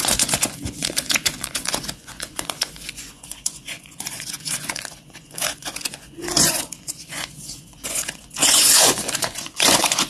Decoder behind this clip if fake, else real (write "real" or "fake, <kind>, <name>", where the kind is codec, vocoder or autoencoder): fake, vocoder, Vocos